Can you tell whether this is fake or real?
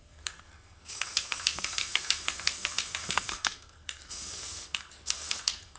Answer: fake